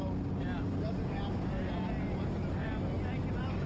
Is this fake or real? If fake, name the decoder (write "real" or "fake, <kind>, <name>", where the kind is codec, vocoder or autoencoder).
real